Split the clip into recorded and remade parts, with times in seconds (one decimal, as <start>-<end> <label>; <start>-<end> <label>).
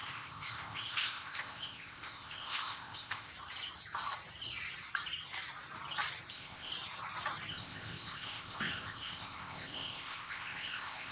0.0-3.3 remade; 3.3-6.3 recorded; 6.3-6.7 remade; 6.7-7.5 recorded; 7.5-11.1 remade